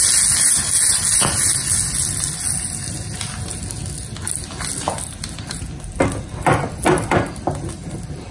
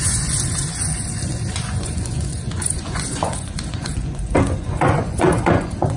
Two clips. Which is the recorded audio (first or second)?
first